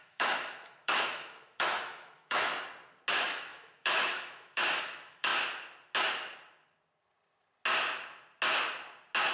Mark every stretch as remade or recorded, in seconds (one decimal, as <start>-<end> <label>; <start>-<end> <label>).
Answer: 0.0-2.5 remade; 2.5-3.1 recorded; 3.1-5.3 remade; 5.3-9.3 recorded